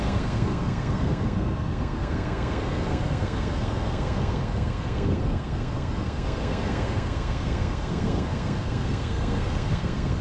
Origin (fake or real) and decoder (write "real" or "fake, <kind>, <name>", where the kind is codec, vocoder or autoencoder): fake, codec, SNAC